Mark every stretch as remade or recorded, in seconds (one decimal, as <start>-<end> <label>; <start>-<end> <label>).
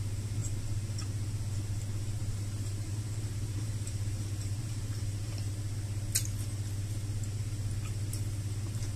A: 0.0-2.2 recorded; 2.2-5.5 remade; 5.5-9.0 recorded